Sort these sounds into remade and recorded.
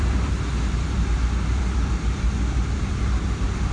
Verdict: remade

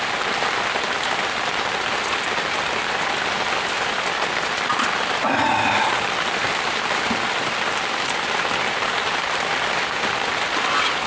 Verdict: remade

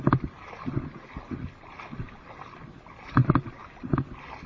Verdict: recorded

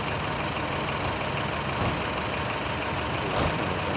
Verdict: recorded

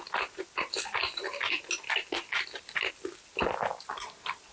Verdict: recorded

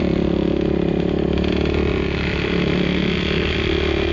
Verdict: recorded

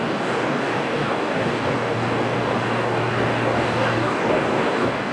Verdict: remade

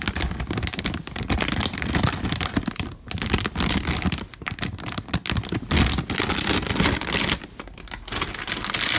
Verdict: recorded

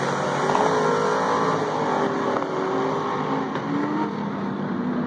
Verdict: recorded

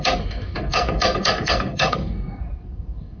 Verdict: remade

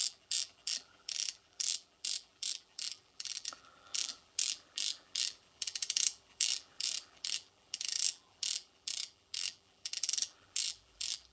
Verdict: remade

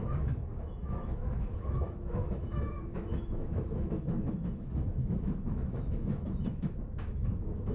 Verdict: remade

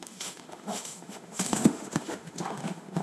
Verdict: remade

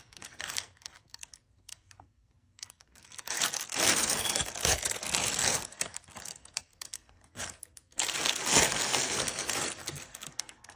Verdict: remade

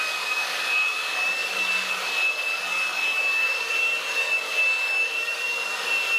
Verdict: remade